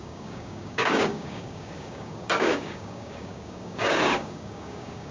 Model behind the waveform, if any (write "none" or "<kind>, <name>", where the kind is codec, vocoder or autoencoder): codec, DAC